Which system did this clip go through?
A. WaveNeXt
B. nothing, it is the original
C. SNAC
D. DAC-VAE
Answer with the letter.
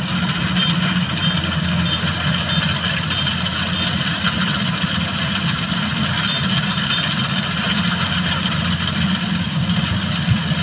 B